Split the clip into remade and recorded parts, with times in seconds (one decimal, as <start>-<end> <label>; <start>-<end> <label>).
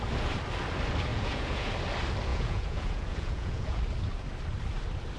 0.0-1.1 recorded; 1.1-1.7 remade; 1.7-2.3 recorded; 2.3-3.8 remade; 3.8-5.2 recorded